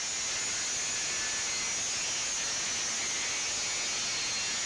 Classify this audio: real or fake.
real